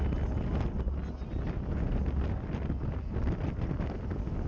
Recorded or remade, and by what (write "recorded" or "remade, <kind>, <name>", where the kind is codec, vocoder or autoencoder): recorded